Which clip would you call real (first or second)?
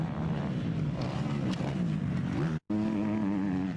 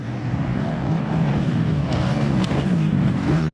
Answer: first